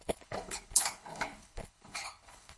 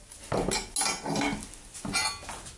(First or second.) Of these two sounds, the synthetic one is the first